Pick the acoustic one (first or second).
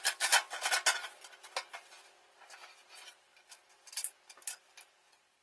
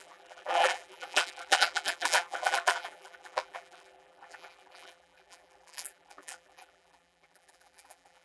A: first